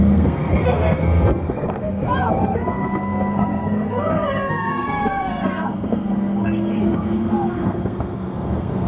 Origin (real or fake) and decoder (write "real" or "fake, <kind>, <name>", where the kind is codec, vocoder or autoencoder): fake, codec, SNAC